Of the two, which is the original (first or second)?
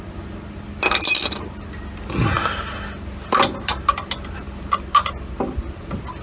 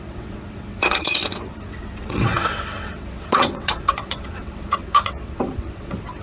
first